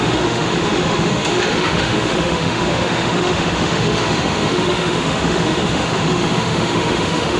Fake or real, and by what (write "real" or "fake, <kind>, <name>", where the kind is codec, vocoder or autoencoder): fake, autoencoder, DAC-VAE